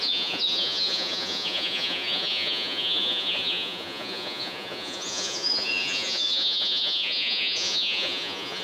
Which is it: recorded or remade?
remade